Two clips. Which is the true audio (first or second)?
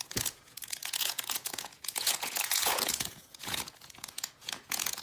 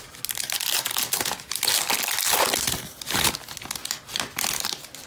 second